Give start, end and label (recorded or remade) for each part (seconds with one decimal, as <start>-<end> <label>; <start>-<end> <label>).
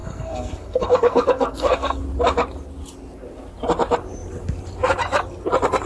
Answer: 0.0-2.0 remade; 2.0-5.9 recorded